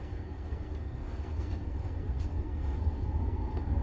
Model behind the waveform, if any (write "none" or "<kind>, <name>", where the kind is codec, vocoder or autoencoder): codec, SNAC